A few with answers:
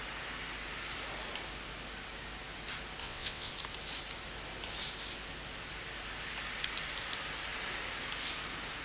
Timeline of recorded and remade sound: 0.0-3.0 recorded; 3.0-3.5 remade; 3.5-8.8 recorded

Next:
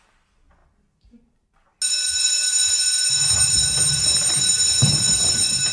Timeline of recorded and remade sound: 0.0-5.7 recorded

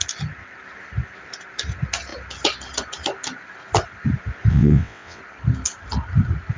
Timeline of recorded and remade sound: 0.0-4.5 recorded; 4.5-5.2 remade; 5.2-6.6 recorded

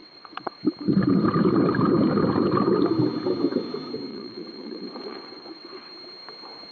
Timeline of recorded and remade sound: 0.0-0.6 remade; 0.6-4.1 recorded; 4.1-5.9 remade; 5.9-6.7 recorded

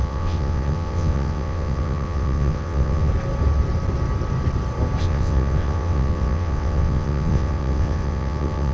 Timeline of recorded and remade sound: 0.0-3.1 remade; 3.1-5.0 recorded; 5.0-8.7 remade